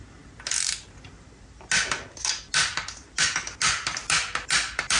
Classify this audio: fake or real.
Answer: real